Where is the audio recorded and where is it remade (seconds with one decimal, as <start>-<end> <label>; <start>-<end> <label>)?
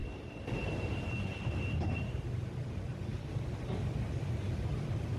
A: 0.0-2.2 remade; 2.2-5.2 recorded